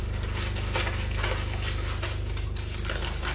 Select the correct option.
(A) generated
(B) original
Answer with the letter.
B